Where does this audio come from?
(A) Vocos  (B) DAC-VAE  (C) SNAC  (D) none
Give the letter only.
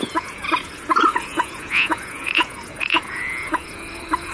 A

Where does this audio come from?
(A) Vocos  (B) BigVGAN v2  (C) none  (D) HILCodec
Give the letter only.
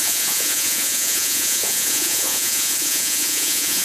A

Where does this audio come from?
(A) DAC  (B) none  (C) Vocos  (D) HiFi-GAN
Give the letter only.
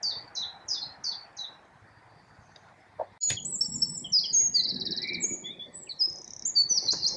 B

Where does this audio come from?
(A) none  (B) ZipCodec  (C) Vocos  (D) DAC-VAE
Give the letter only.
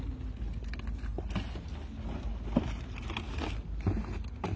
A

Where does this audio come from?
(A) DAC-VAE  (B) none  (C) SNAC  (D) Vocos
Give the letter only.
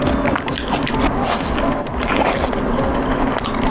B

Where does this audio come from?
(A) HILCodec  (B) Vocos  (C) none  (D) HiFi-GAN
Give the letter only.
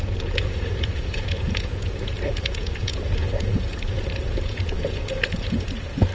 B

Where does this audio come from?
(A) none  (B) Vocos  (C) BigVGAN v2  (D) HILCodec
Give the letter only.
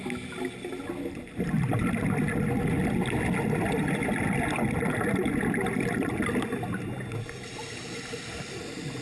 A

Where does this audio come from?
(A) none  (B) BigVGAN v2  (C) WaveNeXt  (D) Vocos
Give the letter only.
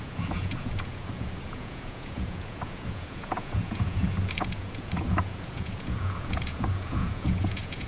D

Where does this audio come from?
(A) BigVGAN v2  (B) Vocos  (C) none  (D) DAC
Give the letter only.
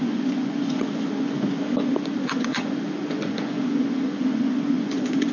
B